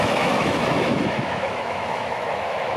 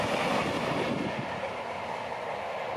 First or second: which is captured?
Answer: second